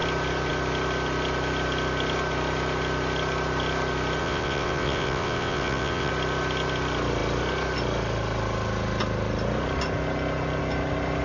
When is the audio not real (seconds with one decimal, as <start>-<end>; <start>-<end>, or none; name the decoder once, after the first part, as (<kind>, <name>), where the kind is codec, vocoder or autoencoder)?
4.2-6.1 (vocoder, WaveNeXt)